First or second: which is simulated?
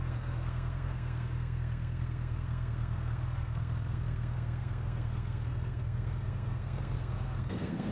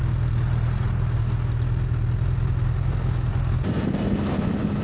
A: first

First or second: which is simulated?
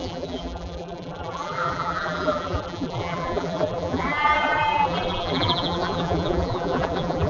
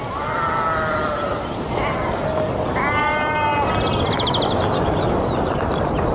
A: first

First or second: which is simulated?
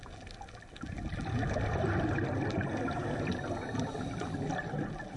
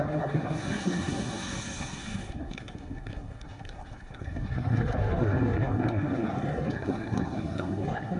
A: second